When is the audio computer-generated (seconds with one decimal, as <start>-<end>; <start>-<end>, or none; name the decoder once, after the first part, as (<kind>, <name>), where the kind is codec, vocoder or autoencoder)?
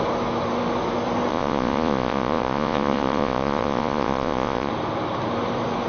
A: 1.3-4.7 (vocoder, Vocos)